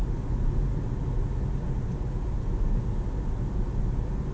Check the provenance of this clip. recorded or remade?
recorded